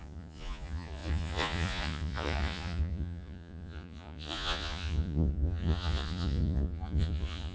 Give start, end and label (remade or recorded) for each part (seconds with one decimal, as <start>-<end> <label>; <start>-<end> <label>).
0.0-7.5 remade